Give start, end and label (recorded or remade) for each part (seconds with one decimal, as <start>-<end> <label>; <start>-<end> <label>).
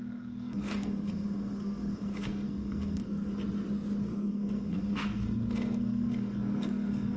0.0-3.3 remade; 3.3-4.0 recorded; 4.0-7.2 remade